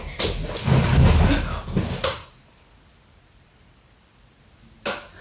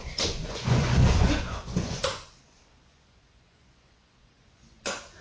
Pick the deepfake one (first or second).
second